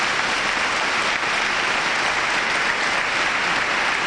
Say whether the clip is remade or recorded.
recorded